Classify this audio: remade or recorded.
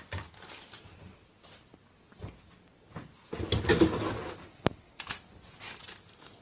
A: recorded